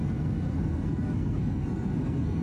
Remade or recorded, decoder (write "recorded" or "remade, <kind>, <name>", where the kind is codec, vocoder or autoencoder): remade, codec, SNAC